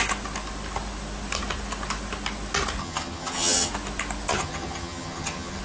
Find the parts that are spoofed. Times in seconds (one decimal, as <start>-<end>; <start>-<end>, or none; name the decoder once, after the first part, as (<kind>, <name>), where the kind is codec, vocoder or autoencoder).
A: 2.8-3.7 (vocoder, HiFi-GAN); 4.3-5.6